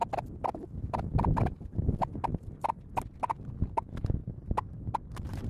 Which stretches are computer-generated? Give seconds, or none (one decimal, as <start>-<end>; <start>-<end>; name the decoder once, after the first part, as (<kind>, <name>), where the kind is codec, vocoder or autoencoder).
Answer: 4.2-5.5 (vocoder, BigVGAN v2)